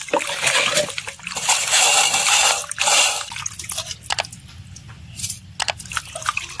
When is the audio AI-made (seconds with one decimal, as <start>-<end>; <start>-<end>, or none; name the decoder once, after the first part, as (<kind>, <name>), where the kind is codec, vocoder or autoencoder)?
none